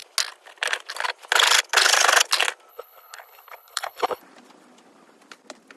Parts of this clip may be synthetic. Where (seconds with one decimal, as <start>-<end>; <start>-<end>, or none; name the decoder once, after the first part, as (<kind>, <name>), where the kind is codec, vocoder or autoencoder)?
2.7-4.2 (codec, HILCodec)